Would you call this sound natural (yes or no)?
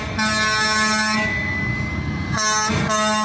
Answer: yes